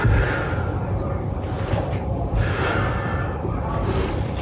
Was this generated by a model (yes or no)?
no